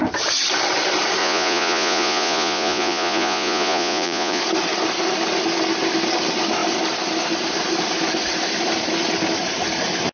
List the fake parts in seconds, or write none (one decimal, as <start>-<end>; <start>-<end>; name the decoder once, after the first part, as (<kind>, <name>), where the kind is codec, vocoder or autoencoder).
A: 1.2-4.4 (vocoder, Vocos)